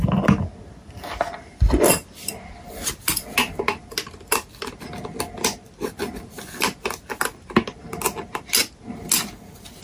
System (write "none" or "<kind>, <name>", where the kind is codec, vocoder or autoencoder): none